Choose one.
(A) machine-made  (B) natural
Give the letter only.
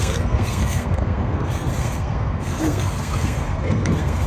A